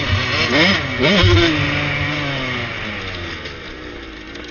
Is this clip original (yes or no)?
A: yes